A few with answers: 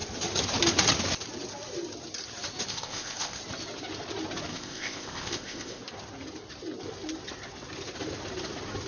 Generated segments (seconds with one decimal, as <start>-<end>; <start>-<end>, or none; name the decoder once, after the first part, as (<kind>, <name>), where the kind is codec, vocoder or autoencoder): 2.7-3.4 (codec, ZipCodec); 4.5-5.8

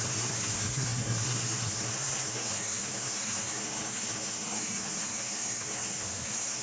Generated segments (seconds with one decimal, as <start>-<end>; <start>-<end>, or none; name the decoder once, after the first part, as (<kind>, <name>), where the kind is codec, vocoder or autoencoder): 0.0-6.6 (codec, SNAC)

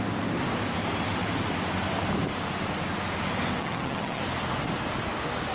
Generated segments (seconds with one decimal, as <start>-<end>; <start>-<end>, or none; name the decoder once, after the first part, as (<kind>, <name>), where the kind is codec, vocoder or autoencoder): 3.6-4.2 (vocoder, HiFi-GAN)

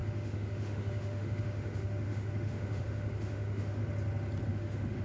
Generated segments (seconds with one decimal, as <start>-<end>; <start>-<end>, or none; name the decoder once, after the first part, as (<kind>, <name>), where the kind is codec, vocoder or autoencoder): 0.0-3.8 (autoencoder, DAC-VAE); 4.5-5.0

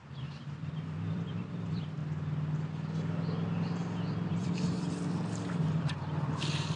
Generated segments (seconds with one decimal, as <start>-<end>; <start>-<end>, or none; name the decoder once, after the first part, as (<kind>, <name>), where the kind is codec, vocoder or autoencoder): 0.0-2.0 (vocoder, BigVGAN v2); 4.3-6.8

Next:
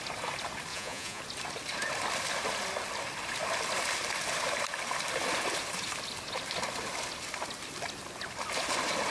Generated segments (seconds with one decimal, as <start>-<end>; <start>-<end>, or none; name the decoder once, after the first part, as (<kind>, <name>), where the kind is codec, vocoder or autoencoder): 0.7-1.2 (vocoder, Vocos)

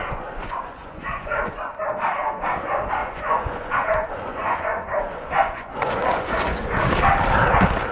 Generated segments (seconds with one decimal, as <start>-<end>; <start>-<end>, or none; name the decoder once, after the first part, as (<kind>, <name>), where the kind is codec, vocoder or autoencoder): 0.0-1.6 (vocoder, Vocos); 3.0-6.9